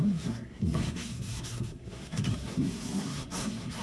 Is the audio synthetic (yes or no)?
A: yes